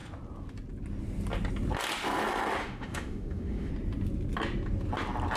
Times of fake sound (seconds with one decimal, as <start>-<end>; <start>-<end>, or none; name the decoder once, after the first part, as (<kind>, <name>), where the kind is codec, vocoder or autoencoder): 2.6-3.7 (autoencoder, DAC-VAE)